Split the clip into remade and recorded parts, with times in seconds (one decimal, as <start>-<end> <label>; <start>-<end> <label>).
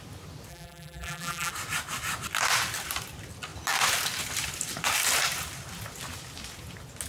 0.0-0.5 recorded; 0.5-1.5 remade; 1.5-7.1 recorded